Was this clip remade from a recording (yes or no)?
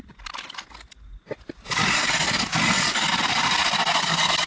no